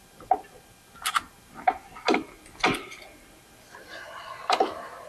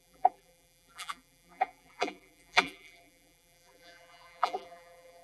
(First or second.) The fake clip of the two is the second